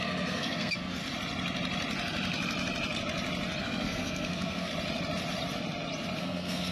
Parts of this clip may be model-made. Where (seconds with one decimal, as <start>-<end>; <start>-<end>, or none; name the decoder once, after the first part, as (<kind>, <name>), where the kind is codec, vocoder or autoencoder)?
0.0-1.0 (codec, SNAC); 3.6-4.7; 6.2-6.7